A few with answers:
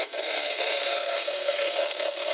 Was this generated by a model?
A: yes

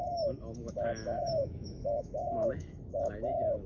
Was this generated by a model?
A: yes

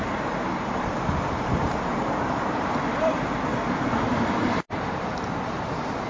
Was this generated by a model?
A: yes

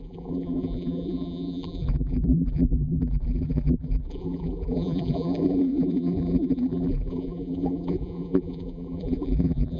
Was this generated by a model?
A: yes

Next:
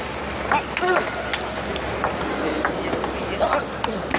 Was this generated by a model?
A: no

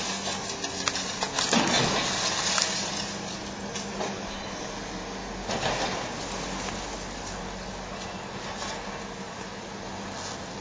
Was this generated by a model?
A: no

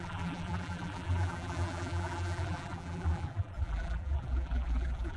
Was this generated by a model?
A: yes